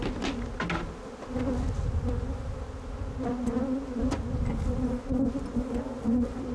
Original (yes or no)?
yes